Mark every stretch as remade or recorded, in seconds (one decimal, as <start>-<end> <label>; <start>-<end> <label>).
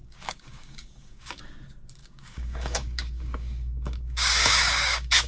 0.0-1.4 remade; 1.4-2.0 recorded; 2.0-5.3 remade